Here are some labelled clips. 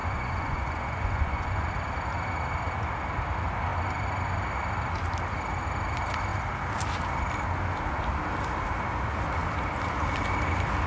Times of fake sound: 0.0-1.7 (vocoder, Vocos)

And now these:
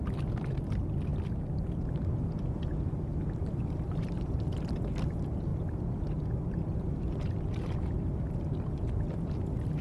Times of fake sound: 3.4-4.9 (vocoder, BigVGAN v2)

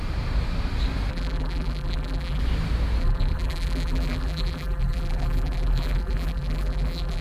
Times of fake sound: 1.1-2.4 (vocoder, BigVGAN v2); 3.0-7.2

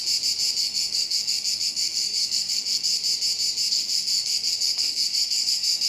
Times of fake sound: 0.6-2.9 (codec, SNAC); 3.7-5.9

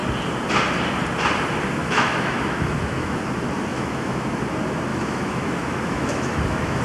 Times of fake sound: 1.8-3.2 (autoencoder, DAC-VAE); 3.7-4.4; 4.9-6.8

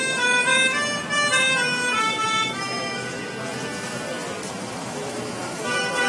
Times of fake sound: 0.0-0.5 (autoencoder, DAC-VAE); 2.0-3.2; 4.5-6.1

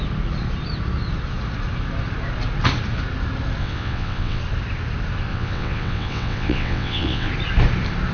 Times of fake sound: 3.6-4.4 (vocoder, WaveNeXt); 5.3-7.3